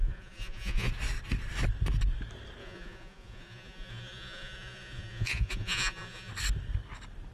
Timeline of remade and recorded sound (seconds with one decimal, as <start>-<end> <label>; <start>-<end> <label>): 0.0-0.9 remade; 0.9-2.6 recorded; 2.6-6.3 remade; 6.3-7.3 recorded